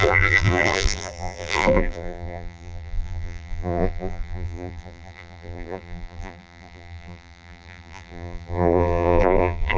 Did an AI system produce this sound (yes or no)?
yes